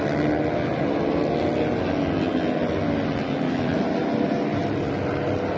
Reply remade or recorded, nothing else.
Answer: recorded